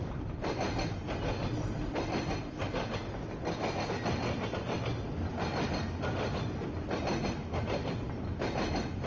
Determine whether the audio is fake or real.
real